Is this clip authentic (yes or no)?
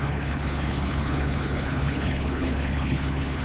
no